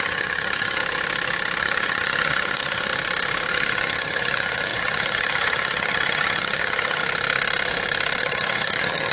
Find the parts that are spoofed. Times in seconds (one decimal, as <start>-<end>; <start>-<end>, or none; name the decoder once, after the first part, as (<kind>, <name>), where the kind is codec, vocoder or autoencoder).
0.0-0.8 (vocoder, HiFi-GAN); 1.6-2.9; 3.5-7.0; 8.2-9.1